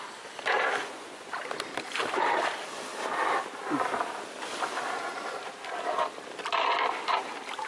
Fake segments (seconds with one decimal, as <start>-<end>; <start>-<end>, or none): 0.8-1.3